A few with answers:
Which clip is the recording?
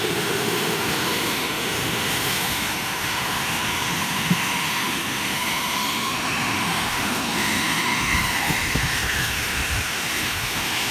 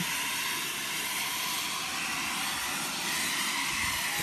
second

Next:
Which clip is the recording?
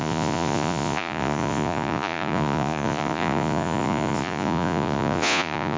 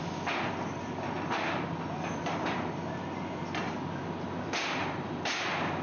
second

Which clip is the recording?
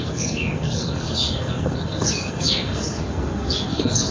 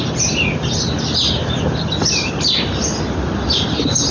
second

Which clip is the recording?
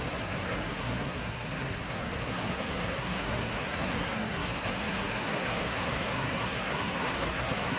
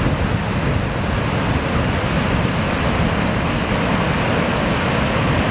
second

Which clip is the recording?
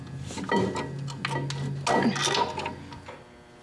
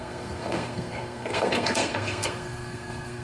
first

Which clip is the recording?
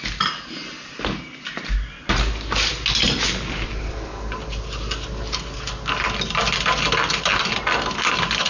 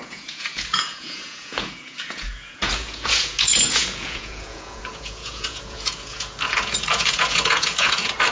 first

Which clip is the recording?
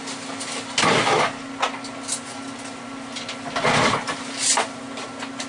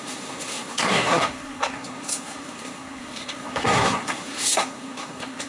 first